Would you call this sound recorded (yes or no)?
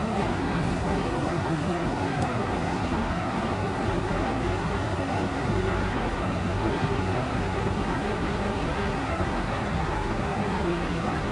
no